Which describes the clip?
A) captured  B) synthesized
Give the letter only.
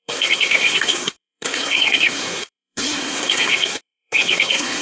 B